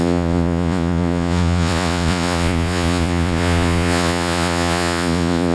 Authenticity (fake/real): fake